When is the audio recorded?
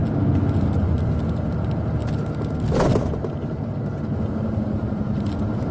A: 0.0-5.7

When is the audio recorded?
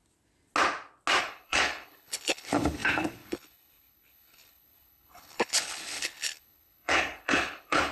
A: 0.0-1.2